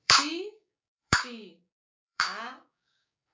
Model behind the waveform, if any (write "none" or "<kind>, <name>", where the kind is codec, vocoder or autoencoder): codec, DAC